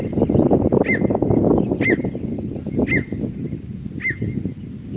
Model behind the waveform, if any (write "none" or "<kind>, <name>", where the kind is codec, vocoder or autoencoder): none